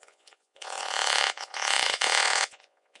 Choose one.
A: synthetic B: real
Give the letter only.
A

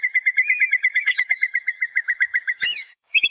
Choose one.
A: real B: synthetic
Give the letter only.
B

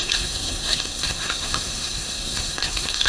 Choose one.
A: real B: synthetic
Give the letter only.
B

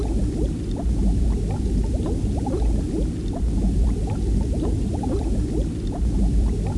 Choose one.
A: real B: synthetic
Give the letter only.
B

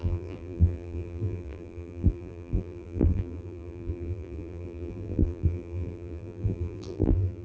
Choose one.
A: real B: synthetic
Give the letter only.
B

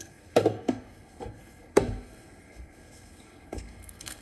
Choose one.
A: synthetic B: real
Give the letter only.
A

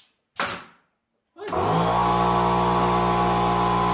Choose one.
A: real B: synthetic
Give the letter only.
A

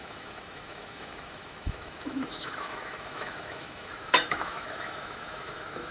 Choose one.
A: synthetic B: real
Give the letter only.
A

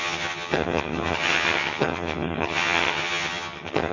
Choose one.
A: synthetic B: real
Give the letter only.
A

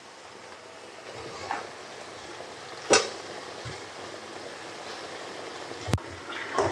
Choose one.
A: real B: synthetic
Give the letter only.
A